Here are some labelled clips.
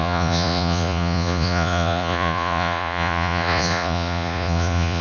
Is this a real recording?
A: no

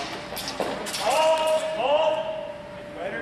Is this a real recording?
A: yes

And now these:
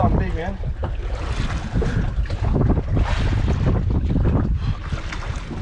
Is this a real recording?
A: yes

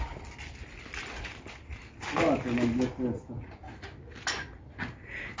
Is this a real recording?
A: yes